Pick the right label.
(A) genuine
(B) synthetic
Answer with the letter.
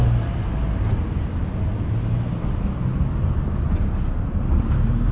A